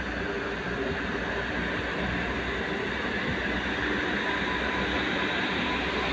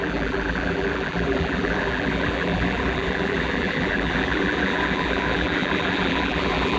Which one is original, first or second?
first